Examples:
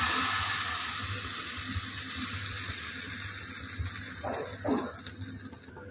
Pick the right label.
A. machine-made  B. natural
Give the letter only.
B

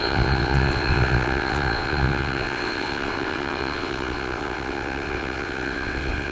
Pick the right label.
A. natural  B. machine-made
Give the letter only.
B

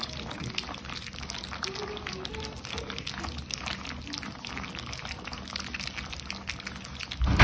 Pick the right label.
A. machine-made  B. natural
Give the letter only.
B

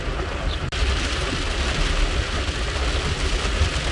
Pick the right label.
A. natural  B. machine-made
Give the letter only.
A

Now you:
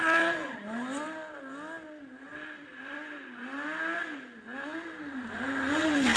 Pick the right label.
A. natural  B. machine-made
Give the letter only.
A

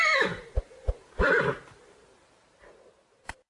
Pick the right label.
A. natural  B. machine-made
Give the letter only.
A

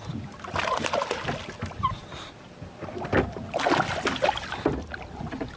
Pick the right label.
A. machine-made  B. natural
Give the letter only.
B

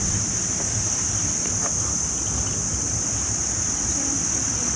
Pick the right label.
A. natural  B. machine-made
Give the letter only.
A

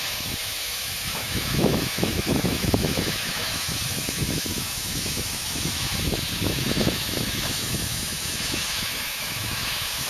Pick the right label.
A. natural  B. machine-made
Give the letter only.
B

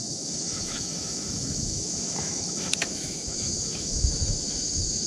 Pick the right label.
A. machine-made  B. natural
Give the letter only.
A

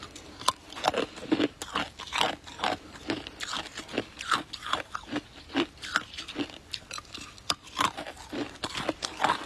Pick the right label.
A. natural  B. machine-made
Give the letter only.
B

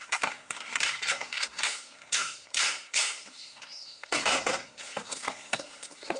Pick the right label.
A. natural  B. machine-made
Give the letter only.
B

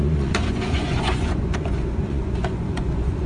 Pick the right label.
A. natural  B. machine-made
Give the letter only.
B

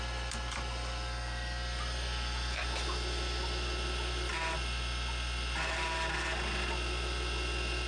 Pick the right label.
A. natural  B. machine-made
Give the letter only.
A